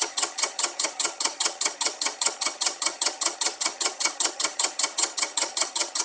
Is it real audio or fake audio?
fake